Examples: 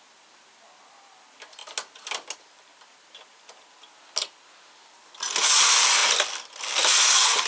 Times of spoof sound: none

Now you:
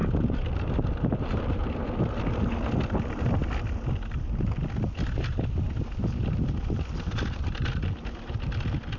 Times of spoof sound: 0.0-2.0